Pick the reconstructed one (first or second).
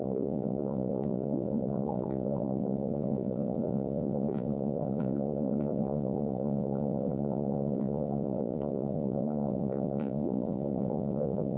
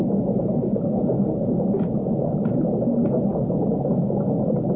first